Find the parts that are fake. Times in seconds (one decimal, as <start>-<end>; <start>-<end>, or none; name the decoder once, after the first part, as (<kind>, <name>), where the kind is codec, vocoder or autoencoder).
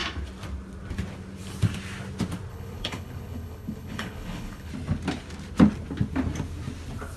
2.5-4.7 (codec, HILCodec)